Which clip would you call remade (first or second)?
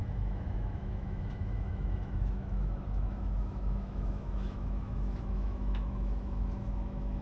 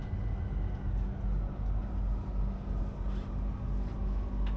first